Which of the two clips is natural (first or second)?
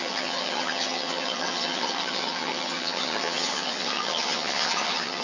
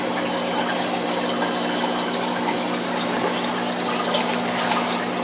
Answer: second